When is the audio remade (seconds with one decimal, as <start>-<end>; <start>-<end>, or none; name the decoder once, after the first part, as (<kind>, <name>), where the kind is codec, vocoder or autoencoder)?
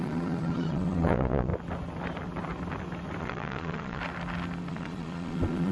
0.0-1.5 (vocoder, Vocos); 3.2-4.0; 4.7-5.7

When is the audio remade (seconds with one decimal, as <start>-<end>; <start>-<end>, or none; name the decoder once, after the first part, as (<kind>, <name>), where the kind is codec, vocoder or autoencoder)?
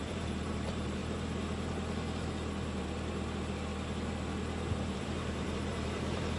0.0-1.0 (vocoder, BigVGAN v2); 4.8-6.4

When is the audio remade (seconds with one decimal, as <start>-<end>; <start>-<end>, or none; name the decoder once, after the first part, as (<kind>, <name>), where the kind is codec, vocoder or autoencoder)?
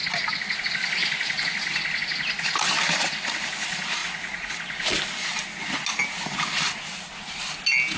4.0-4.5 (vocoder, Vocos)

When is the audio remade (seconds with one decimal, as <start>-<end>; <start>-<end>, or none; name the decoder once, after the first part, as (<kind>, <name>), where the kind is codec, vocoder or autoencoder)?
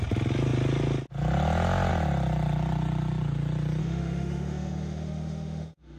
3.8-6.0 (autoencoder, DAC-VAE)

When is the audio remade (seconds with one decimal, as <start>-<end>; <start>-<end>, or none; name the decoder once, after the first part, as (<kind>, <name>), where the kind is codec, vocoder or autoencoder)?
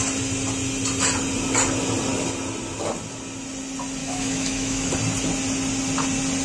4.0-4.9 (autoencoder, DAC-VAE)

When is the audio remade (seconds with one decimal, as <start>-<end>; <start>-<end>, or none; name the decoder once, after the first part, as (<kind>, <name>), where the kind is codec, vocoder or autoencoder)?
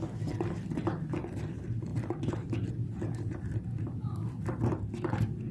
none